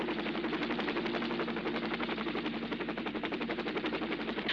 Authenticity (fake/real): real